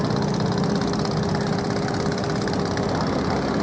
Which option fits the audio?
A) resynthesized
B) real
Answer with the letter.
B